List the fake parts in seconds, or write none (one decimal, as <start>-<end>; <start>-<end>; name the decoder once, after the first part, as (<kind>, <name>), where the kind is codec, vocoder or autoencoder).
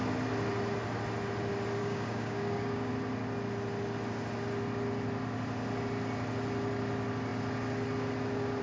1.8-2.9 (codec, DAC)